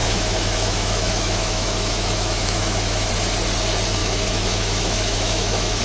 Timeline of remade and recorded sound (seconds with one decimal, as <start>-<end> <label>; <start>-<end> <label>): 0.0-3.1 remade; 3.1-4.0 recorded; 4.0-5.8 remade